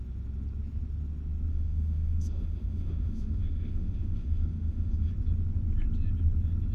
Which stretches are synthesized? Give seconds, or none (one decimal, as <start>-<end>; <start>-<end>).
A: 1.5-5.1